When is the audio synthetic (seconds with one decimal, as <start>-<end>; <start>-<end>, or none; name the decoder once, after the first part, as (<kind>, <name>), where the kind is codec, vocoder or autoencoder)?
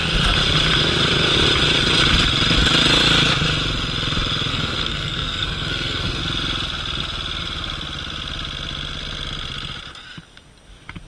4.5-6.2 (codec, SNAC)